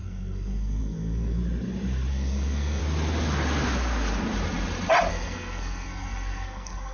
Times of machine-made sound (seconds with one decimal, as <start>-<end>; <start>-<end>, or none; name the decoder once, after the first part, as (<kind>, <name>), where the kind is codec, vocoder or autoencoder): 0.0-1.4 (codec, SNAC); 2.1-2.8; 5.1-6.9